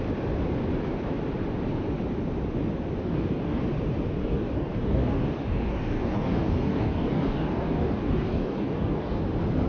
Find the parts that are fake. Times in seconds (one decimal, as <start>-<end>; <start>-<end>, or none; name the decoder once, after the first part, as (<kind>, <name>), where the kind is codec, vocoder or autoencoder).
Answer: 3.0-3.6 (codec, DAC); 4.2-9.2